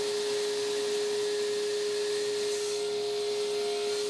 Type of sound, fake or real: real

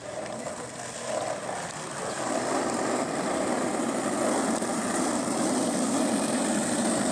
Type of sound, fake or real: fake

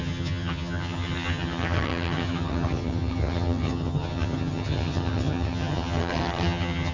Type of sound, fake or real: fake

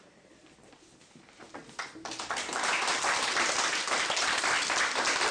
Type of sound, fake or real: real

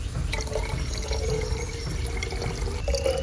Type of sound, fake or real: real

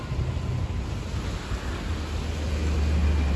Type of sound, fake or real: real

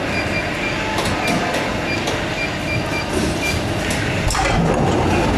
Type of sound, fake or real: real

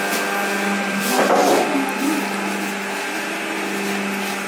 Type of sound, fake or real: real